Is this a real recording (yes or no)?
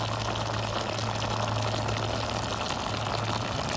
yes